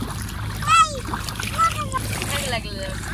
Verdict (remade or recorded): recorded